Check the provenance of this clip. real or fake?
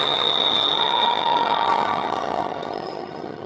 fake